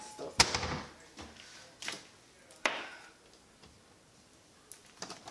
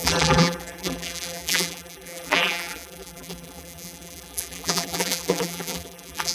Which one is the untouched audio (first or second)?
first